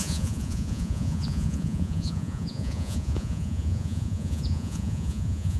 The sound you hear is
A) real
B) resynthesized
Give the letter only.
B